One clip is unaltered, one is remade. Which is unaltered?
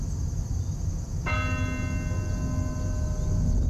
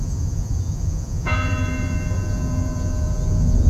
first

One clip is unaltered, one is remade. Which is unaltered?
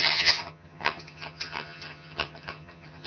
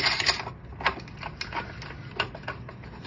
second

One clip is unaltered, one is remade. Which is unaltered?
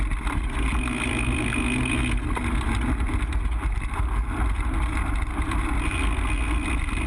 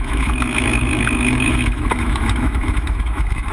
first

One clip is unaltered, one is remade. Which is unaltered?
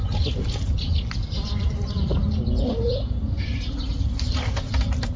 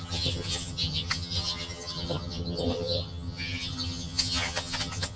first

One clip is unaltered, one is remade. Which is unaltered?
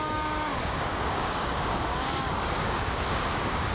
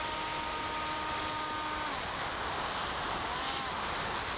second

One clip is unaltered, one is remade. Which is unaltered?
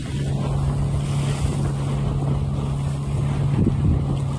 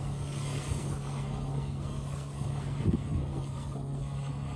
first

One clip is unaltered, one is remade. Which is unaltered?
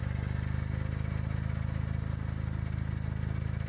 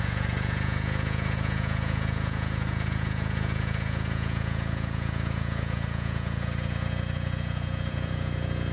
first